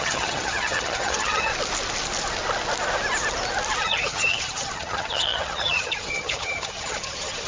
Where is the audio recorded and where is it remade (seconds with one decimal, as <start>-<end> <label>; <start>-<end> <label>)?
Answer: 0.0-1.5 remade; 1.5-3.8 recorded; 3.8-7.5 remade